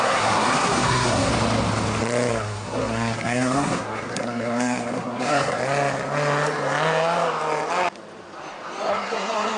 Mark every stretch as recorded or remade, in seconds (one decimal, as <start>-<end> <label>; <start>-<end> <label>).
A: 0.0-1.3 remade; 1.3-2.3 recorded; 2.3-5.6 remade; 5.6-8.9 recorded; 8.9-9.6 remade